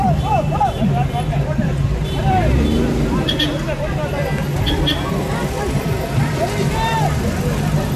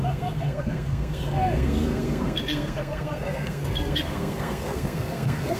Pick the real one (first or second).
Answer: first